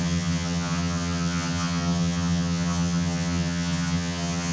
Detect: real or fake fake